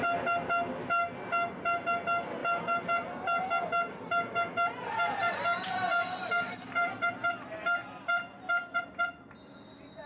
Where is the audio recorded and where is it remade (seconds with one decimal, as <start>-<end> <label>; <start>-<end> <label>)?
0.0-2.4 recorded; 2.4-7.1 remade; 7.1-10.1 recorded